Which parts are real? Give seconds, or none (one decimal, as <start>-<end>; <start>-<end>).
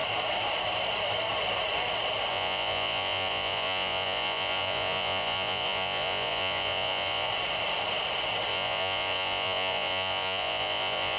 0.0-2.3; 7.3-8.5